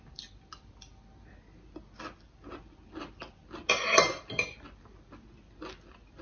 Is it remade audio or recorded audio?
recorded